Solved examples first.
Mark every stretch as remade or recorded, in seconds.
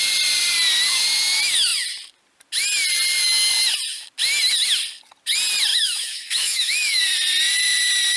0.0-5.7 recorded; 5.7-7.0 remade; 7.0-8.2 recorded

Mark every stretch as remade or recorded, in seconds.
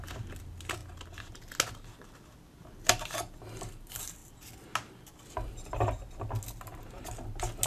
0.0-0.8 recorded; 0.8-1.5 remade; 1.5-7.7 recorded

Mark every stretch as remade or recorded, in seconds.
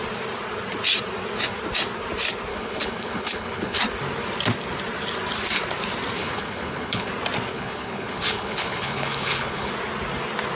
0.0-2.5 recorded; 2.5-3.8 remade; 3.8-6.2 recorded; 6.2-7.1 remade; 7.1-7.5 recorded; 7.5-9.7 remade; 9.7-10.6 recorded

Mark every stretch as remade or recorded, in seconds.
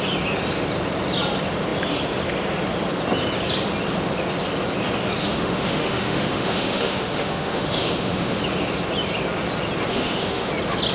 0.0-5.2 recorded; 5.2-8.4 remade; 8.4-9.9 recorded; 9.9-10.5 remade; 10.5-10.9 recorded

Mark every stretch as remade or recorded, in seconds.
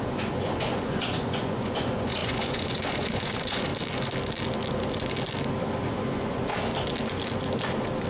0.0-3.7 remade; 3.7-5.8 recorded; 5.8-6.5 remade; 6.5-8.1 recorded